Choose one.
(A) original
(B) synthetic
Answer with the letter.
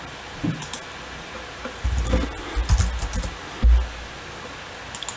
A